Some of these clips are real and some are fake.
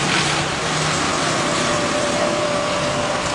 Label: real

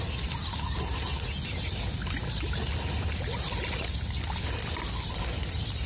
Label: real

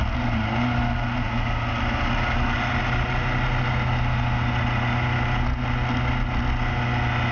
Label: real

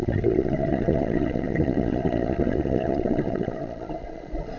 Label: fake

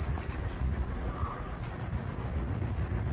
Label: fake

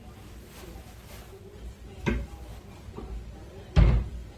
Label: real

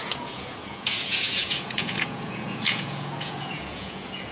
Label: fake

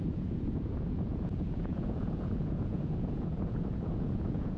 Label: fake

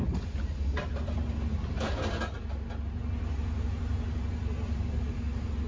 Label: real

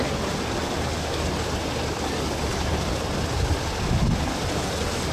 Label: real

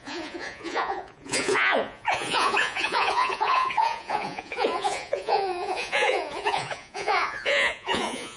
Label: fake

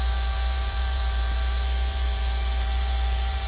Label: fake